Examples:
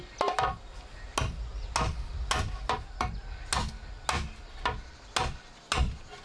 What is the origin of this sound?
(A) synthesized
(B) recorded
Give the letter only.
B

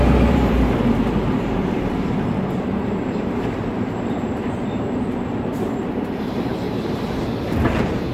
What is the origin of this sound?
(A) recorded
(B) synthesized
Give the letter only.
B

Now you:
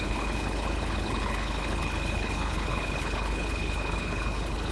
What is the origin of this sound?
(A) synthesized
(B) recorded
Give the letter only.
A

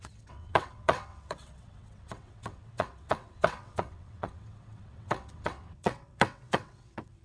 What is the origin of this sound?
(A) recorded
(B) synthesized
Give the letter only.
B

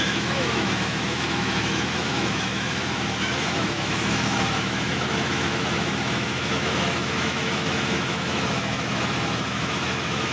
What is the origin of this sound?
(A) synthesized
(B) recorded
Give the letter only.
A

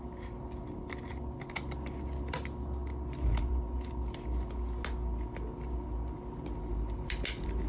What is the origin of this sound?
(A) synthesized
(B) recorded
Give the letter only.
B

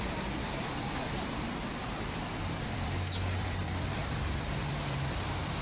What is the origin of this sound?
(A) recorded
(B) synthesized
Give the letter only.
B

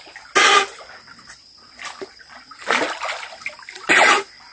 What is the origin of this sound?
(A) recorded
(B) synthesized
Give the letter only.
A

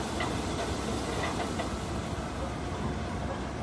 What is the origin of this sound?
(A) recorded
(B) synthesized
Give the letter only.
B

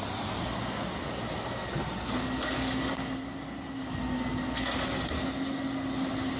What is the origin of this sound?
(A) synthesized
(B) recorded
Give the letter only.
B